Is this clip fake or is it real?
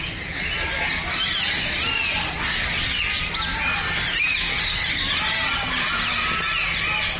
real